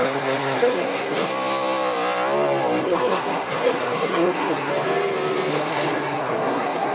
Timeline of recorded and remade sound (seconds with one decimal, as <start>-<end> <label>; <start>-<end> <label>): 0.0-1.3 remade; 1.3-2.8 recorded; 2.8-4.7 remade; 4.7-5.5 recorded; 5.5-6.9 remade